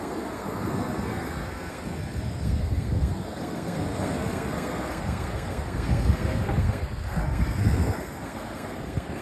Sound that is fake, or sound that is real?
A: fake